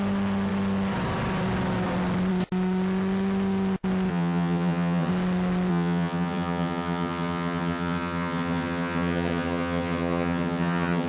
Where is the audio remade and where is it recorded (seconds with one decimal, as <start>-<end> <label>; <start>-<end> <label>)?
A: 0.0-4.1 recorded; 4.1-5.1 remade; 5.1-5.7 recorded; 5.7-11.1 remade